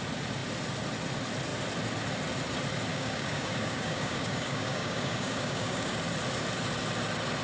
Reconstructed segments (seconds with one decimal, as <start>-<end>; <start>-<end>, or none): 2.9-6.0